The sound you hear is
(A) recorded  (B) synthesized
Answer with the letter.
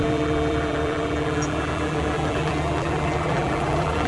B